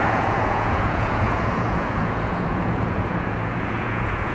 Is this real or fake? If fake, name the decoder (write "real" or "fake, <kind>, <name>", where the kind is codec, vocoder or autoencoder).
fake, vocoder, Vocos